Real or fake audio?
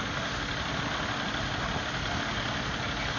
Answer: real